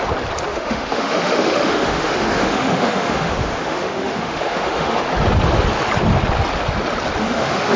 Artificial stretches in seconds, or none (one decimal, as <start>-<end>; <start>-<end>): 0.5-5.0; 7.2-7.8

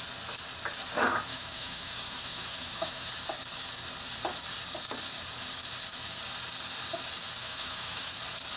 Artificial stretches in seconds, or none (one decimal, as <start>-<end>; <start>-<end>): 1.3-3.1; 7.4-8.2

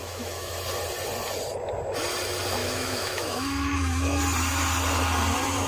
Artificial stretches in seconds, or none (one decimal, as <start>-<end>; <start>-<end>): 0.0-0.5; 2.6-4.2

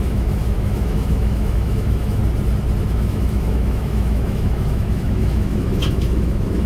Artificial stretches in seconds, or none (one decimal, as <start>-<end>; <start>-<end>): 0.0-2.2; 2.8-6.7

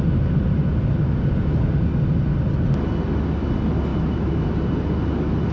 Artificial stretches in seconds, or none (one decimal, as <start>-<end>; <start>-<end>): 3.9-4.5